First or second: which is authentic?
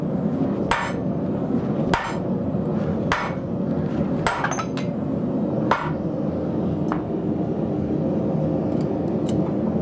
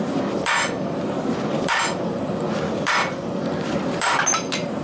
first